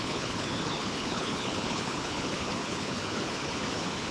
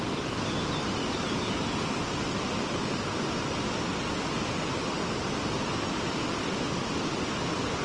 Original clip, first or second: second